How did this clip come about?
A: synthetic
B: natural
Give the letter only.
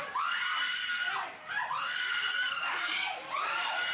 B